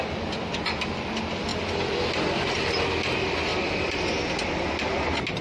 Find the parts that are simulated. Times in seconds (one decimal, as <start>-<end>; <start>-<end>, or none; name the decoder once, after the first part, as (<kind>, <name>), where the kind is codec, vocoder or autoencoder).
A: none